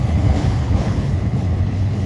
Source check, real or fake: fake